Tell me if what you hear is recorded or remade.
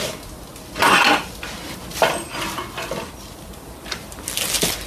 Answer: recorded